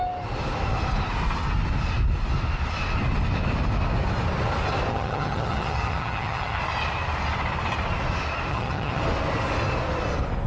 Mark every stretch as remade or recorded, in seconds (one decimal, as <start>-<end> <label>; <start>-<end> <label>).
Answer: 0.0-4.9 recorded; 4.9-6.6 remade; 6.6-8.5 recorded; 8.5-9.0 remade; 9.0-10.5 recorded

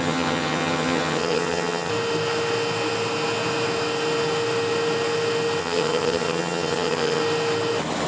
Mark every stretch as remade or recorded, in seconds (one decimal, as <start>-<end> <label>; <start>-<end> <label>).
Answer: 0.0-1.9 remade; 1.9-5.6 recorded; 5.6-7.2 remade; 7.2-8.1 recorded

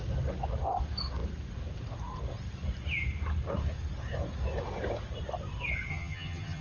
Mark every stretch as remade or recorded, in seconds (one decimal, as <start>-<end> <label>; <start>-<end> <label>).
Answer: 0.0-5.9 recorded; 5.9-6.6 remade

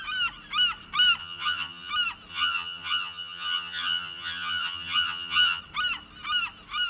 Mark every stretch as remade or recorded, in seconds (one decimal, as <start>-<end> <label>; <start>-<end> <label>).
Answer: 0.0-1.2 recorded; 1.2-1.9 remade; 1.9-2.3 recorded; 2.3-5.6 remade; 5.6-6.9 recorded

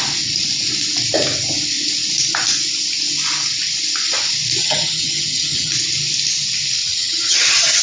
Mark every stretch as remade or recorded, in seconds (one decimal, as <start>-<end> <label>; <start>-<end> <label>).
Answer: 0.0-4.6 recorded; 4.6-5.7 remade; 5.7-6.8 recorded; 6.8-7.8 remade

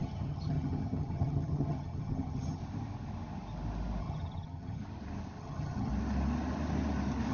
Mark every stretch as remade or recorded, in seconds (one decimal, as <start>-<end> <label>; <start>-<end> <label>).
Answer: 0.0-2.6 remade; 2.6-4.0 recorded; 4.0-4.8 remade; 4.8-5.4 recorded; 5.4-5.9 remade; 5.9-7.3 recorded

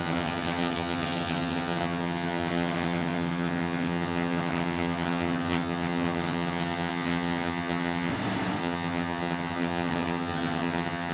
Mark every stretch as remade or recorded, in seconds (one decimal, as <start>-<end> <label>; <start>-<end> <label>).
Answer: 0.0-8.1 remade; 8.1-8.6 recorded; 8.6-11.1 remade

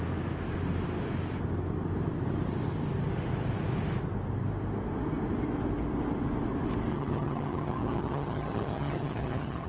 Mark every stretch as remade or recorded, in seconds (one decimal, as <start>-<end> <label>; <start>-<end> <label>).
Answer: 0.0-6.9 recorded; 6.9-9.7 remade